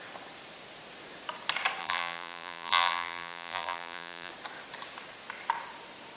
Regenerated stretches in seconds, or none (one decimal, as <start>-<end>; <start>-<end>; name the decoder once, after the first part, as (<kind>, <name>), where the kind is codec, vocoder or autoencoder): 1.8-4.3 (vocoder, BigVGAN v2)